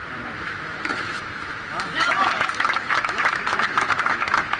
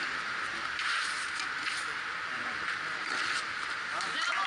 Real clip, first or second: second